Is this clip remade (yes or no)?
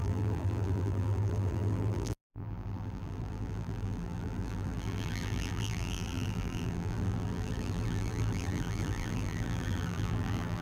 yes